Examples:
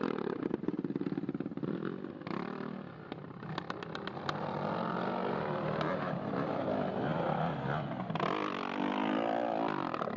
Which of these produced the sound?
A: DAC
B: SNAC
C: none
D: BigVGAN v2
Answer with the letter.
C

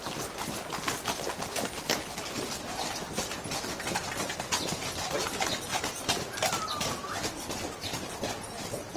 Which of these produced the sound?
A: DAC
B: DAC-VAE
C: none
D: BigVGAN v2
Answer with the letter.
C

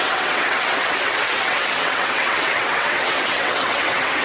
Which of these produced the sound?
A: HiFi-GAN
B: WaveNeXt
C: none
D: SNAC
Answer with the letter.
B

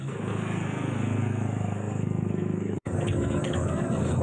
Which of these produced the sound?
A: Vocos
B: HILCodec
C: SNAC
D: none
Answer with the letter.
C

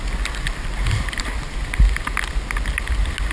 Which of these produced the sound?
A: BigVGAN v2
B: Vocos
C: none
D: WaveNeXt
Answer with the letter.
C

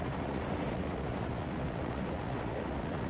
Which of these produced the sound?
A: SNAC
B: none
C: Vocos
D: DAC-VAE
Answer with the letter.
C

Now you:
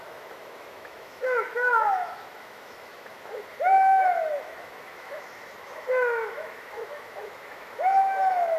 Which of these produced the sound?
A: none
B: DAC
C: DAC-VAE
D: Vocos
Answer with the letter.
C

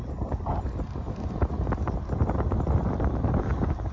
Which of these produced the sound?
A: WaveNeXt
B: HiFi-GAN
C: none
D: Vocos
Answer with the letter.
C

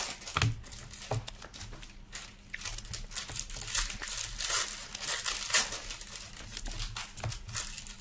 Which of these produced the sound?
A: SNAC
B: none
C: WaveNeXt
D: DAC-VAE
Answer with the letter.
B